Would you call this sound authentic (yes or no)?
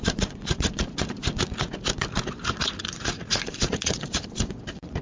no